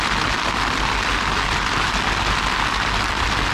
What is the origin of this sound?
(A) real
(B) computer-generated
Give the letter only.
A